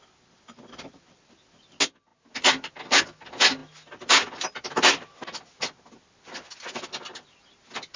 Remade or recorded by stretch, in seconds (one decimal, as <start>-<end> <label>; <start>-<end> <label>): 0.0-8.0 recorded